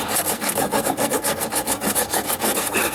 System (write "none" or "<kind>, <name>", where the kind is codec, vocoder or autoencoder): codec, SNAC